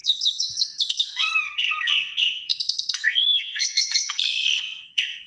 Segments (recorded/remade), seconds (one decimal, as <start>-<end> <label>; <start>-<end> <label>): 0.0-5.3 remade